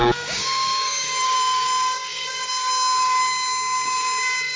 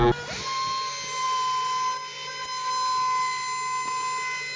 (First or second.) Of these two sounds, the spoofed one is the first